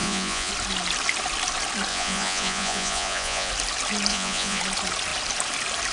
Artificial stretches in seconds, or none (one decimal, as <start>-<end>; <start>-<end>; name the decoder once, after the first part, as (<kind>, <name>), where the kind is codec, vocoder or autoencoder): 0.0-0.5 (vocoder, Vocos); 1.9-3.5; 4.1-4.6